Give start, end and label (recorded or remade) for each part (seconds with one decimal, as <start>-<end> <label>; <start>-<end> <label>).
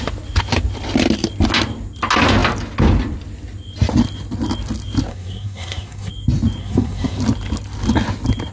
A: 0.0-5.1 recorded; 5.1-6.1 remade; 6.1-6.6 recorded; 6.6-7.2 remade; 7.2-8.5 recorded